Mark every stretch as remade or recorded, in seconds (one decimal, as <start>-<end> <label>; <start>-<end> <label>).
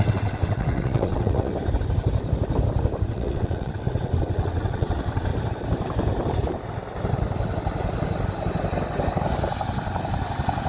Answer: 0.0-1.5 remade; 1.5-3.1 recorded; 3.1-5.3 remade; 5.3-10.7 recorded